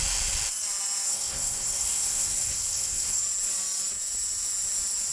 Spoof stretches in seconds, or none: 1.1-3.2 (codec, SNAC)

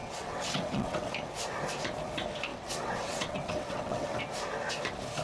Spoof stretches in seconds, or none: 0.0-1.1 (vocoder, WaveNeXt); 2.5-4.2

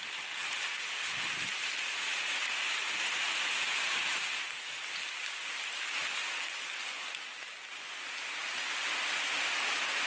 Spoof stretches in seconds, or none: none

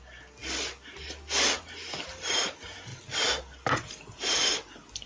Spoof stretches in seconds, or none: none

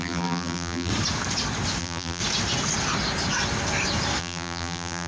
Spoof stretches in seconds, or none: 0.0-0.9 (vocoder, BigVGAN v2); 1.8-2.2; 4.2-5.1